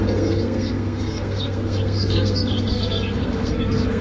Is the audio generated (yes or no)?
yes